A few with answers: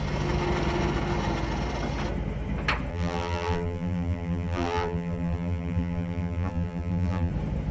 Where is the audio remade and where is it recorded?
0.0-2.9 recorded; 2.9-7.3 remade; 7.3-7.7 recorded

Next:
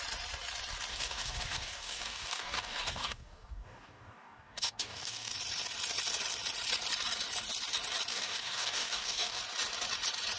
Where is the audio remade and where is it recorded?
0.0-0.9 recorded; 0.9-5.3 remade; 5.3-8.1 recorded; 8.1-9.4 remade; 9.4-10.4 recorded

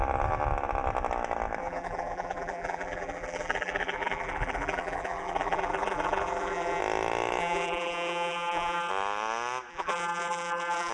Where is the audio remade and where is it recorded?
0.0-1.6 recorded; 1.6-6.8 remade; 6.8-7.4 recorded; 7.4-8.9 remade; 8.9-9.7 recorded; 9.7-10.9 remade